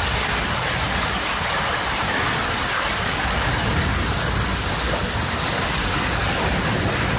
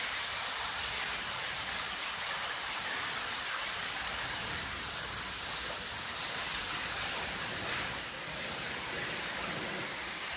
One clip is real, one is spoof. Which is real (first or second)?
first